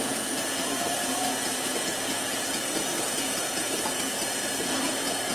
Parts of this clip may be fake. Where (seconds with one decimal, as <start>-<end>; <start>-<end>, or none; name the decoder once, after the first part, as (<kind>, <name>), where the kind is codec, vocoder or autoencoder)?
0.0-5.3 (vocoder, Vocos)